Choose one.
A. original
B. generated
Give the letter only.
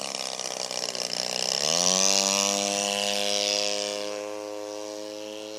A